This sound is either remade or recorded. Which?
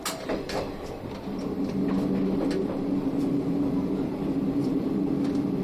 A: recorded